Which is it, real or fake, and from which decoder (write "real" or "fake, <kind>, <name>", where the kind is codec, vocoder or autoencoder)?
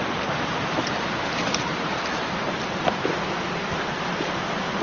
fake, vocoder, BigVGAN v2